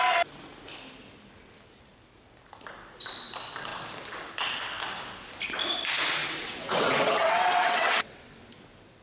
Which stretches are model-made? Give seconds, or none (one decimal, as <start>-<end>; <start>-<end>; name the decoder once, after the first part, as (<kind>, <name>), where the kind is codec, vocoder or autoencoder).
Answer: 6.2-8.4 (vocoder, WaveNeXt)